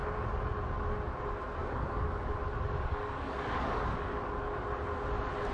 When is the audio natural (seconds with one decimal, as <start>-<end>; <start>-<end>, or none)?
0.0-1.6; 2.3-2.9; 4.4-5.5